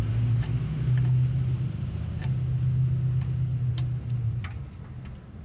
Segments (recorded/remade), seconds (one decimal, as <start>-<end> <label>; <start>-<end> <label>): 0.0-5.4 recorded